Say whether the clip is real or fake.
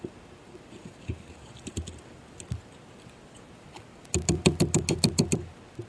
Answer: real